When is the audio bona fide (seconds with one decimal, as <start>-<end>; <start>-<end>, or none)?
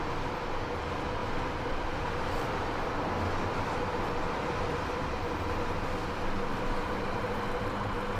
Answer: 0.0-1.2; 2.9-6.5